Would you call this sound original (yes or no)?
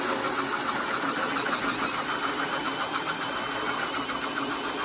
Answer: yes